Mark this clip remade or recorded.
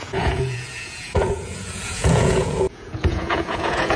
remade